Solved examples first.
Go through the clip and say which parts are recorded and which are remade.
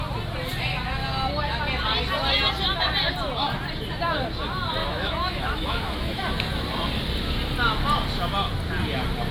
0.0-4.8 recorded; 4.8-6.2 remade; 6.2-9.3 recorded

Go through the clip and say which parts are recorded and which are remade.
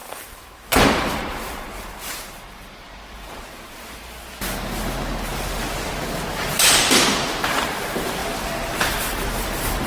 0.0-4.3 remade; 4.3-8.2 recorded; 8.2-9.9 remade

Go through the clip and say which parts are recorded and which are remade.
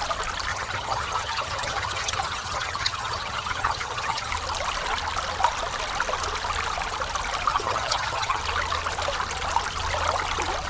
0.0-0.5 recorded; 0.5-4.3 remade; 4.3-7.5 recorded; 7.5-8.4 remade; 8.4-10.7 recorded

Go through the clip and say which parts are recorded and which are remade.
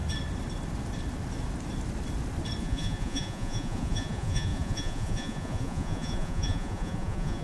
0.0-2.6 recorded; 2.6-7.4 remade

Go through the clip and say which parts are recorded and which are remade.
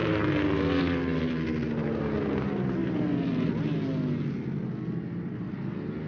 0.0-2.8 recorded; 2.8-3.5 remade; 3.5-6.1 recorded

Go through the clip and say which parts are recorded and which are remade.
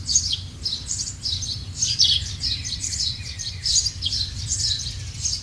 0.0-5.4 recorded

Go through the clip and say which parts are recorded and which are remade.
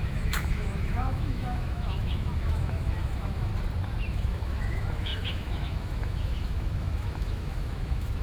0.0-3.5 remade; 3.5-4.1 recorded; 4.1-8.2 remade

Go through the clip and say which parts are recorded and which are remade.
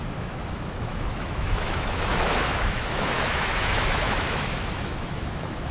0.0-5.7 remade